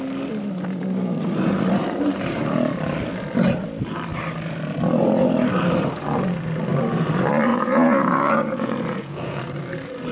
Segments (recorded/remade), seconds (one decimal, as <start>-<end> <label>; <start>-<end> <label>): 0.0-7.5 recorded; 7.5-9.4 remade; 9.4-10.1 recorded

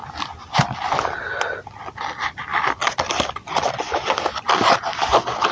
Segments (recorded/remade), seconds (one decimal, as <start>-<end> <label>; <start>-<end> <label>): 0.0-5.5 recorded